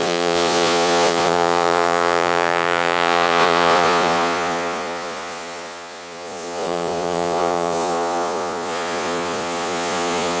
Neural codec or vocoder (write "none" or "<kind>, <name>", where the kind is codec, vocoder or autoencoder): vocoder, Vocos